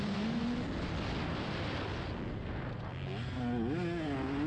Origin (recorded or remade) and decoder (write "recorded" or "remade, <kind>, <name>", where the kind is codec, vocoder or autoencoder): recorded